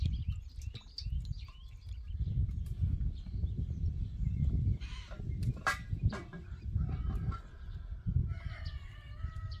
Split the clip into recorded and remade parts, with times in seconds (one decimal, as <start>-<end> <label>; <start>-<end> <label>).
0.0-3.4 recorded; 3.4-7.8 remade; 7.8-9.6 recorded